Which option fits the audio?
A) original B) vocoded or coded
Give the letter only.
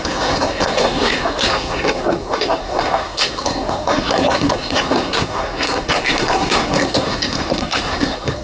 B